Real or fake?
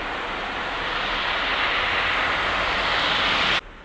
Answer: real